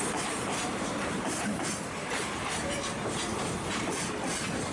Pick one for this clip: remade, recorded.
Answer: remade